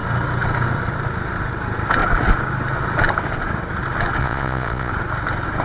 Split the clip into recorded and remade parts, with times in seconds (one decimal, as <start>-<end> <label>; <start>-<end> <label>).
0.0-4.2 recorded; 4.2-4.9 remade; 4.9-5.6 recorded